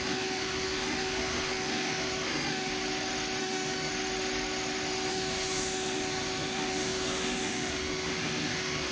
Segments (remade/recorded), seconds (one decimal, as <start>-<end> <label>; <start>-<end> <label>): 0.0-2.7 remade; 2.7-3.4 recorded; 3.4-3.9 remade; 3.9-5.1 recorded; 5.1-8.9 remade